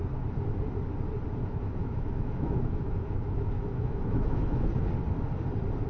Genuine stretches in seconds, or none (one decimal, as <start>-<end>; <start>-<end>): 0.0-1.4; 4.9-5.9